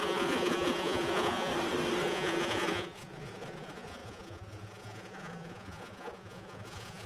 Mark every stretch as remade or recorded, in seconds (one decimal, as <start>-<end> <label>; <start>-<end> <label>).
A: 0.0-1.5 remade; 1.5-2.0 recorded; 2.0-7.1 remade